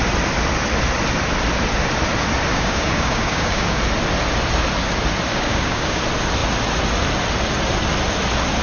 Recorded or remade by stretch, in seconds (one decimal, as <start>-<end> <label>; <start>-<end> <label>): 0.0-2.5 recorded; 2.5-3.8 remade; 3.8-5.3 recorded; 5.3-6.0 remade; 6.0-8.6 recorded